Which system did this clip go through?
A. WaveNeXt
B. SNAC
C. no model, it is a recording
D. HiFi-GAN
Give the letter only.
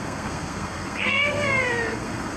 B